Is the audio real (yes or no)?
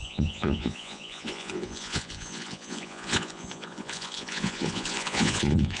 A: no